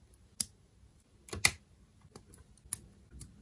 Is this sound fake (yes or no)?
no